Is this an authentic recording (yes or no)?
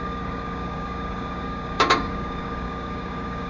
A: no